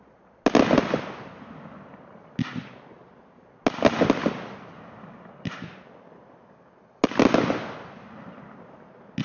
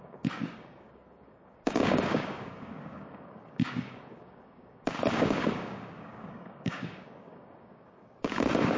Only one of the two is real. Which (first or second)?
first